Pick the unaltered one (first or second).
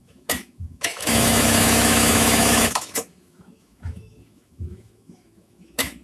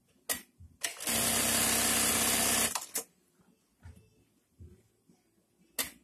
second